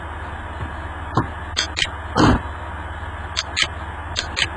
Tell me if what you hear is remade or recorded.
recorded